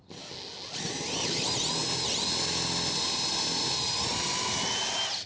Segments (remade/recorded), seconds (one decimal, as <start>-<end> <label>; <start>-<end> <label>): 0.0-5.3 recorded